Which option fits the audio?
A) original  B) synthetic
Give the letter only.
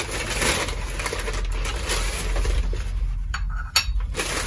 A